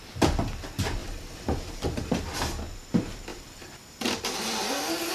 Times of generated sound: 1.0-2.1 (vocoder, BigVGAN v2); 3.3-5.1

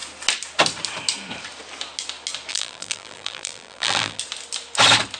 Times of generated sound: 2.5-4.2 (vocoder, BigVGAN v2)

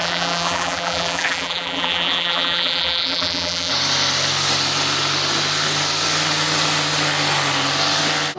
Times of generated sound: 0.0-3.7 (vocoder, BigVGAN v2)

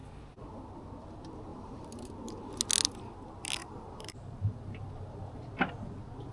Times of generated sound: 1.5-2.1 (vocoder, BigVGAN v2); 3.6-5.7

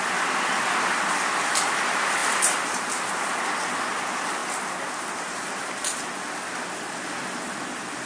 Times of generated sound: 2.2-3.1 (vocoder, BigVGAN v2); 4.4-6.0

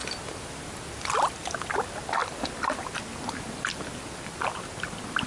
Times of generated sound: none

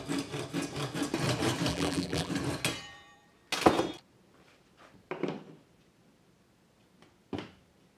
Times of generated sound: 1.7-2.3 (vocoder, BigVGAN v2)